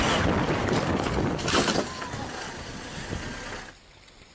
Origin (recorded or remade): recorded